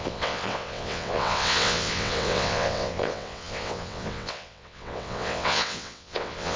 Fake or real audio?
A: fake